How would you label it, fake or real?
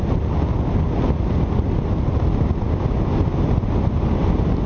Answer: real